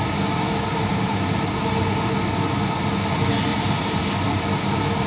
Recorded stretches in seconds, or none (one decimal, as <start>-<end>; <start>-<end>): 0.0-0.9; 1.5-3.5; 4.1-5.1